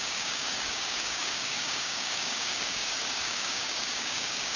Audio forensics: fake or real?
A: fake